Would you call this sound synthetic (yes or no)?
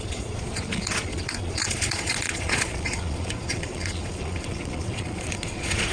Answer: yes